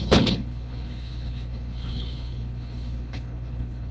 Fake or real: fake